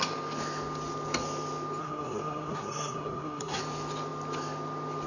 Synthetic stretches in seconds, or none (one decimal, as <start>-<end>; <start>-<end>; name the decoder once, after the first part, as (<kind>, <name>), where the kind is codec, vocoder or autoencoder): 1.8-3.6 (codec, SNAC)